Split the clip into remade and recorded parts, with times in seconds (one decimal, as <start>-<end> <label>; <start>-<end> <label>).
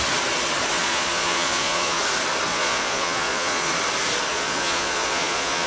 0.0-0.8 recorded; 0.8-2.0 remade; 2.0-2.5 recorded; 2.5-3.7 remade; 3.7-4.3 recorded; 4.3-5.7 remade